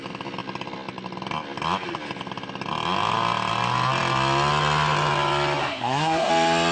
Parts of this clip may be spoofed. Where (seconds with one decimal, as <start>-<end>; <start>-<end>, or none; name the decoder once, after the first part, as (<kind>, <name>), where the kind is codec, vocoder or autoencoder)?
5.6-6.3 (codec, SNAC)